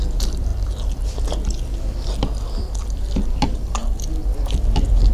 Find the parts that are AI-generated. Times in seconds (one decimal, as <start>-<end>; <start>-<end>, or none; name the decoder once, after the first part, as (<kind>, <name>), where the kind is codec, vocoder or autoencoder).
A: 0.0-5.1 (vocoder, BigVGAN v2)